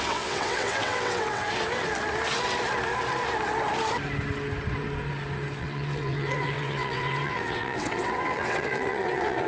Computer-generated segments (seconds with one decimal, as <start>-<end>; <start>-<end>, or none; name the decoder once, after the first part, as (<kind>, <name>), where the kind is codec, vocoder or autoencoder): 0.0-1.4 (vocoder, WaveNeXt); 5.6-9.5